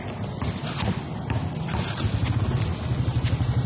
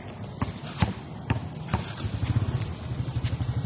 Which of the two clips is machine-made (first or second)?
second